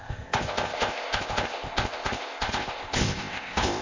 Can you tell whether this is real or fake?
fake